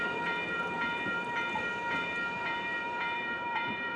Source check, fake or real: fake